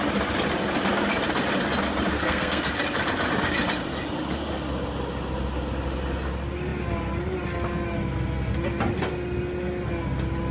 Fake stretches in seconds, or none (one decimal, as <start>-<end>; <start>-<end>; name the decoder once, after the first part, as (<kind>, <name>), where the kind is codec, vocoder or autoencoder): 2.1-2.7 (codec, SNAC)